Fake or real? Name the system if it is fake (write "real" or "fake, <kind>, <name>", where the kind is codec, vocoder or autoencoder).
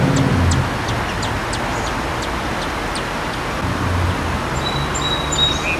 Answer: real